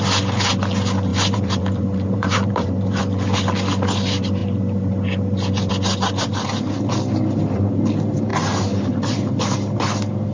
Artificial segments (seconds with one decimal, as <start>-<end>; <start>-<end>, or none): 1.1-3.0; 8.3-9.3